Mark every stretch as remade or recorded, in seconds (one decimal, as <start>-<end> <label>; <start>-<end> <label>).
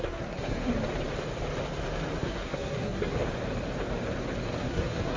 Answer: 0.0-0.7 remade; 0.7-2.2 recorded; 2.2-3.3 remade; 3.3-4.6 recorded; 4.6-5.2 remade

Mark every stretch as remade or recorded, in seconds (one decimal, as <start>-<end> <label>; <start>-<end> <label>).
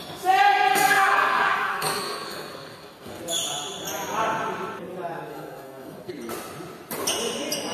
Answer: 0.0-0.7 recorded; 0.7-3.2 remade; 3.2-5.3 recorded; 5.3-6.1 remade; 6.1-7.7 recorded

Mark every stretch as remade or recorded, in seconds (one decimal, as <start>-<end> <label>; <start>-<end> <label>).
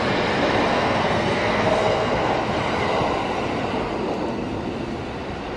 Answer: 0.0-0.7 recorded; 0.7-2.3 remade; 2.3-5.6 recorded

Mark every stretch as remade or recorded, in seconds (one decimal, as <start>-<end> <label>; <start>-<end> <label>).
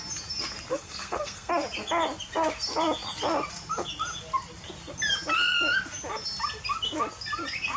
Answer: 0.0-0.7 recorded; 0.7-1.5 remade; 1.5-7.8 recorded